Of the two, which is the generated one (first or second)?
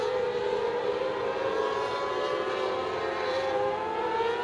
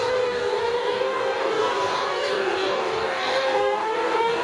second